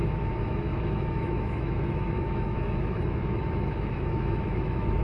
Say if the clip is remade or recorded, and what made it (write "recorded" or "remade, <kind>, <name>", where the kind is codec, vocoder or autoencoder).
remade, autoencoder, DAC-VAE